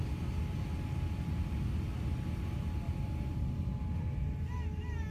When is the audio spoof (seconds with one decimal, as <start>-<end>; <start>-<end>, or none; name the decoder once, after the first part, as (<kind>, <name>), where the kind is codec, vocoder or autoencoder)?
none